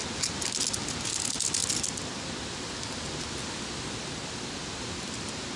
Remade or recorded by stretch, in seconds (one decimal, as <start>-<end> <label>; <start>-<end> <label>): 0.0-5.6 recorded